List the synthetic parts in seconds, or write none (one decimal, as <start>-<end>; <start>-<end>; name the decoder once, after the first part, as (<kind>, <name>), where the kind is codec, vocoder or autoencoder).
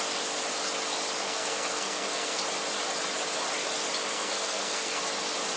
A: 1.2-2.4 (codec, SNAC); 4.1-5.0